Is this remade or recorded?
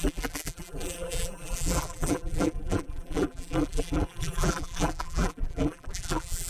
remade